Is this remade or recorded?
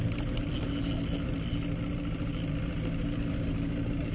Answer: recorded